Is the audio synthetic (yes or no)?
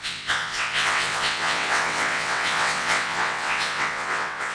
yes